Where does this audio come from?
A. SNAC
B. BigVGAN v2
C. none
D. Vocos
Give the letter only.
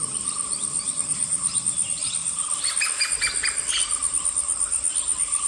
C